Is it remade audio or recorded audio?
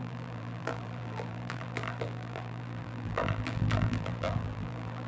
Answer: remade